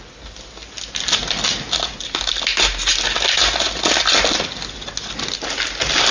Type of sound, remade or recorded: recorded